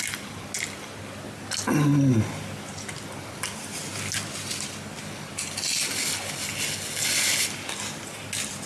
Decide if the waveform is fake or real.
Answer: real